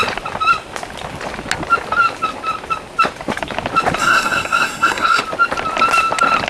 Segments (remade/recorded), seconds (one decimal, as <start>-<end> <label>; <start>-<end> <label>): 0.0-4.0 recorded; 4.0-5.2 remade; 5.2-6.5 recorded

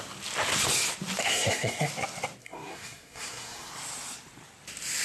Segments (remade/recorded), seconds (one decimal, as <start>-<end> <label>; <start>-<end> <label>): 0.0-1.2 recorded; 1.2-1.9 remade; 1.9-2.4 recorded; 2.4-3.7 remade; 3.7-5.0 recorded